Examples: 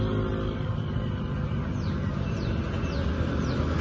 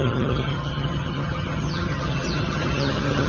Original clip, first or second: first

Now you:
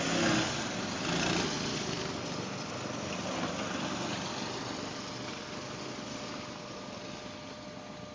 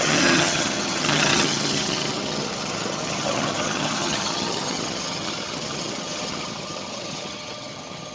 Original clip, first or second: first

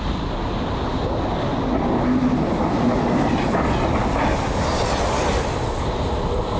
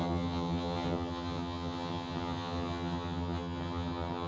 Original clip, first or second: first